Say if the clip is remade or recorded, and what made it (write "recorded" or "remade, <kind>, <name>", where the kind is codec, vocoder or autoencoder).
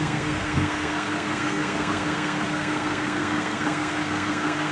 remade, codec, SNAC